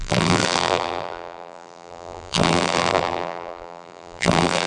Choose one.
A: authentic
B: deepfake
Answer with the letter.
B